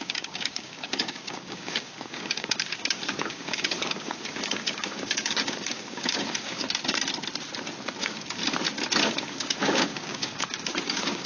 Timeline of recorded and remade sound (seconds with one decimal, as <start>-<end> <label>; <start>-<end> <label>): 0.0-6.6 remade; 6.6-8.0 recorded; 8.0-8.4 remade; 8.4-9.0 recorded; 9.0-11.3 remade